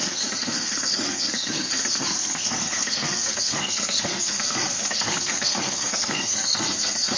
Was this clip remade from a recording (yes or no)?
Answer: yes